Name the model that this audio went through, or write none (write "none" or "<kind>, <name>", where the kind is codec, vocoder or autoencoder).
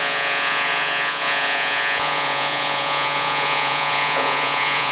vocoder, Vocos